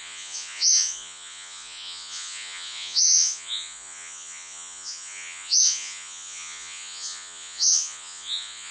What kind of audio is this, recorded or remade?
remade